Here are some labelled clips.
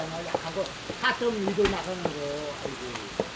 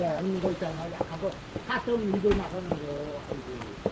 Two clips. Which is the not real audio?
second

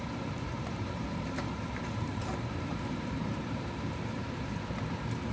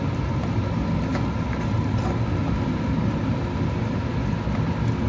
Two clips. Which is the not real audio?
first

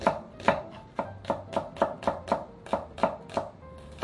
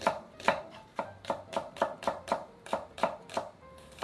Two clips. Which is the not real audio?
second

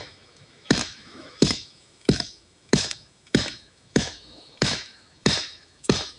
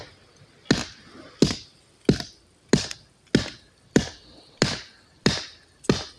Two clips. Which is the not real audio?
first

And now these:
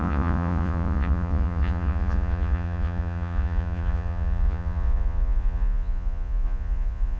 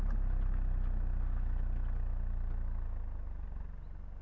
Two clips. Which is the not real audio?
first